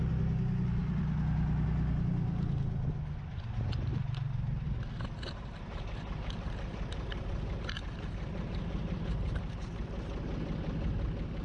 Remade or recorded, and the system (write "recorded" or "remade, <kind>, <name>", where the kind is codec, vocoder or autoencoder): recorded